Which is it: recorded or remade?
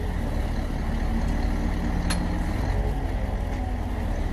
recorded